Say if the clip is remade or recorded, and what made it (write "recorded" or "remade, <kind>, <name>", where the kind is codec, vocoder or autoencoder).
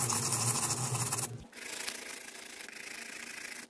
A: recorded